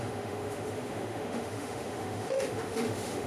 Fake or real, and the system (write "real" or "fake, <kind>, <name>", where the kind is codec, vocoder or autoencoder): fake, autoencoder, DAC-VAE